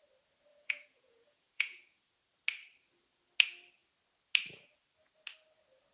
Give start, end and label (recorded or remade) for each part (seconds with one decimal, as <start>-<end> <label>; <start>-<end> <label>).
0.0-0.5 recorded; 0.5-2.1 remade; 2.1-5.9 recorded